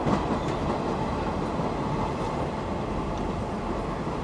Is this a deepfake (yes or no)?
no